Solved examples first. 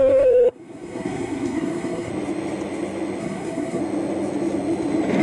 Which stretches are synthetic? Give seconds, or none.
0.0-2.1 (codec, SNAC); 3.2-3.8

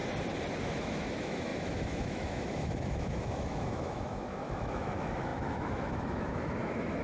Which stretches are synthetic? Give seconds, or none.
0.6-7.0 (autoencoder, DAC-VAE)

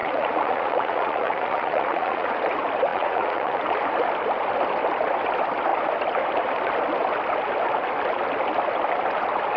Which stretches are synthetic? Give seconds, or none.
0.0-2.4 (vocoder, Vocos); 2.9-3.6

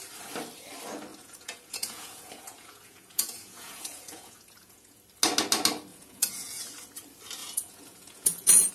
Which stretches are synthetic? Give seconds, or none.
1.1-5.0 (vocoder, Vocos); 5.9-6.6; 7.4-8.7

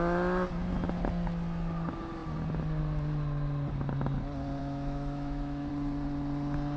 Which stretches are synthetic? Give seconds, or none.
4.6-5.7 (autoencoder, DAC-VAE)

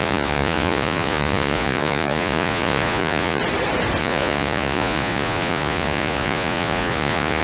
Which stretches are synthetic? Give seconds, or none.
0.0-3.4 (vocoder, Vocos); 4.0-7.4